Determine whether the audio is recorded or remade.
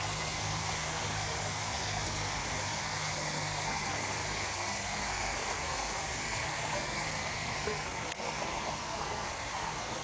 remade